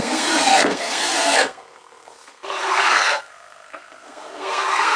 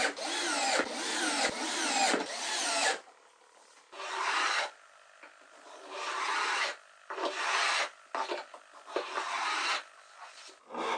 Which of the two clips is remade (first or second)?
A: first